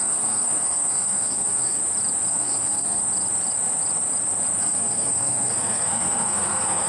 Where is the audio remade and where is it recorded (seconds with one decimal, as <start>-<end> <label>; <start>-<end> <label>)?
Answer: 0.0-1.8 remade; 1.8-2.3 recorded; 2.3-3.0 remade; 3.0-4.6 recorded; 4.6-6.9 remade